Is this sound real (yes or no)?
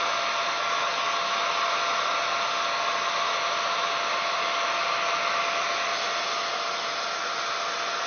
yes